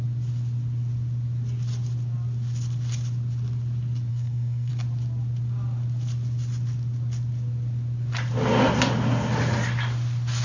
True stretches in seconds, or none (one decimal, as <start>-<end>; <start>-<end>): 0.0-4.1; 4.7-10.4